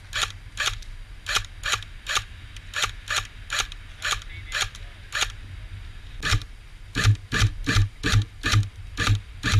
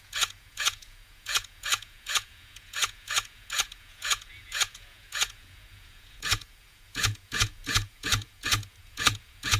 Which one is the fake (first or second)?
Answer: second